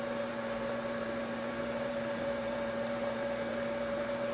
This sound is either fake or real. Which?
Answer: fake